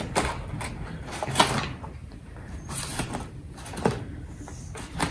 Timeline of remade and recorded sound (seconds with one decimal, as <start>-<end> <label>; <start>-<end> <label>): 0.0-2.0 recorded; 2.0-3.1 remade; 3.1-5.1 recorded